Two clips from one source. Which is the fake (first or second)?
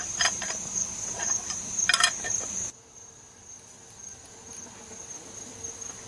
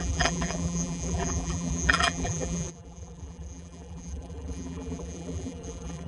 second